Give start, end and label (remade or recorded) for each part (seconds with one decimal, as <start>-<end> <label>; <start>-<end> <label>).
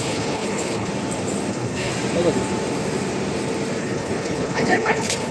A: 0.0-0.9 remade; 0.9-1.5 recorded; 1.5-1.9 remade; 1.9-3.8 recorded; 3.8-5.3 remade